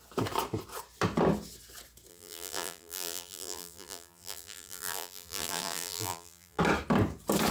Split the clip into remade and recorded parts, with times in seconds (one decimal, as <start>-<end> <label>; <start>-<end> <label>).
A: 0.0-2.1 recorded; 2.1-6.6 remade; 6.6-7.5 recorded